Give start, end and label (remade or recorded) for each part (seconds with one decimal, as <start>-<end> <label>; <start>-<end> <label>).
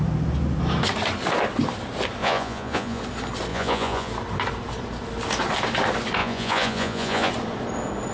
0.0-2.2 recorded; 2.2-3.0 remade; 3.0-3.5 recorded; 3.5-4.1 remade; 4.1-6.2 recorded; 6.2-7.3 remade; 7.3-8.1 recorded